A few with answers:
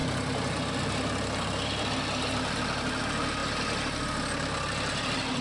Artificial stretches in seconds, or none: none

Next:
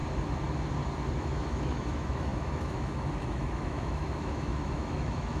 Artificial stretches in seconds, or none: 1.2-5.4

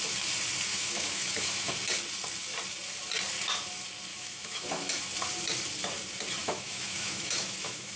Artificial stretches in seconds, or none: 0.7-1.7; 4.1-5.0; 6.4-8.0

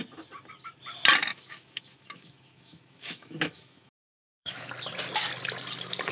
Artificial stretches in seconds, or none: 1.2-4.7

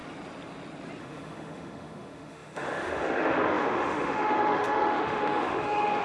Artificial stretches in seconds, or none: 1.0-6.0

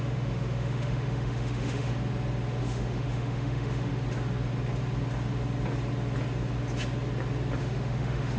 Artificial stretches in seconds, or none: 0.0-1.9; 2.6-3.9; 7.6-8.4